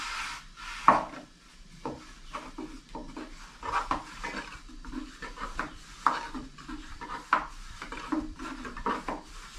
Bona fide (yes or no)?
yes